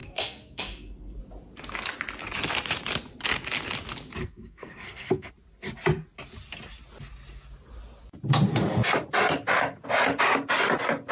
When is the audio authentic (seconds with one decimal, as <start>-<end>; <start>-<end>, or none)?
1.2-4.2; 5.3-11.1